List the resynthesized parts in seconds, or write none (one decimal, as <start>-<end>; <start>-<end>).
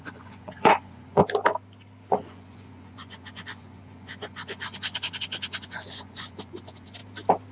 0.0-1.2; 2.1-7.0